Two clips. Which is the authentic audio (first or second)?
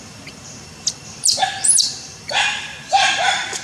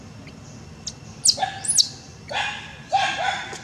second